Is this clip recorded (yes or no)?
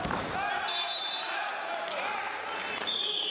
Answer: no